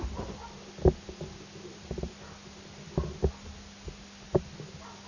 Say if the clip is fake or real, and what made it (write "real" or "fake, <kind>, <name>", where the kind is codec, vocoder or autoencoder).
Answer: real